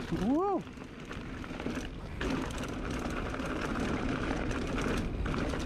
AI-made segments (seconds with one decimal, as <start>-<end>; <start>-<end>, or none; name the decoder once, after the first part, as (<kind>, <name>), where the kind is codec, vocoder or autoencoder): 3.7-4.5 (vocoder, BigVGAN v2)